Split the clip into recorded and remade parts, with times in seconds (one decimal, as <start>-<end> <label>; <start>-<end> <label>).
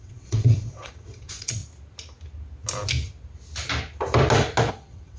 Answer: 0.0-1.6 remade; 1.6-4.7 recorded; 4.7-5.2 remade